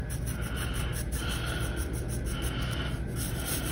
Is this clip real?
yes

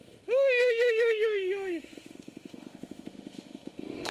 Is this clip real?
no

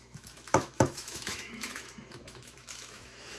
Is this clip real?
no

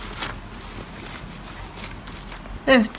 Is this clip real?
yes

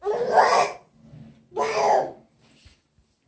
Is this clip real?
yes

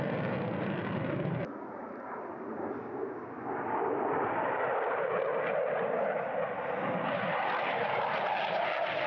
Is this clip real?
yes